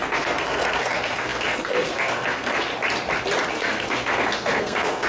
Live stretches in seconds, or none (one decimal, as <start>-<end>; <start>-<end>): 2.7-3.5